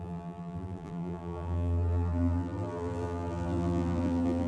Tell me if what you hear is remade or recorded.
remade